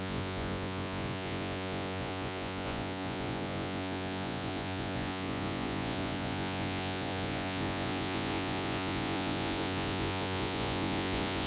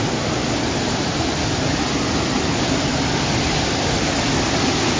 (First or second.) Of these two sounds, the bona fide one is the second